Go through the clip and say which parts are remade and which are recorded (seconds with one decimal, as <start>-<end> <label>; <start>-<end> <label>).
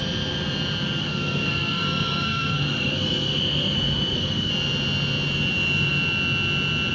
0.0-1.0 recorded; 1.0-4.5 remade; 4.5-6.9 recorded